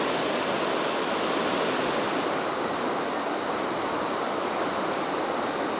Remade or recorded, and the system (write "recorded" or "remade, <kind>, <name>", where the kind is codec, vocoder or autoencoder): recorded